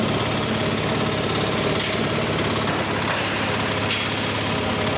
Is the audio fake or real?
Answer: real